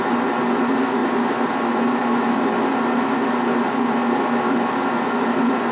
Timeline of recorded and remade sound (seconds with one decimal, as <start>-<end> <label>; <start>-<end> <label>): 0.0-5.7 recorded